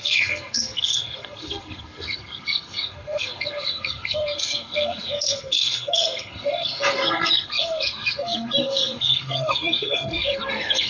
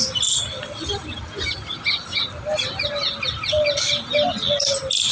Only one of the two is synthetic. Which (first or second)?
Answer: first